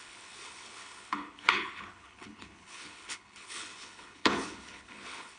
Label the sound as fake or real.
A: fake